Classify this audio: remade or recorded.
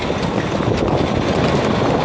recorded